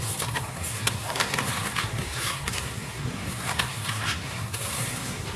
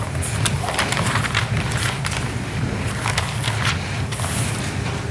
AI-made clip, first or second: first